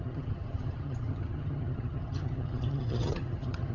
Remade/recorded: remade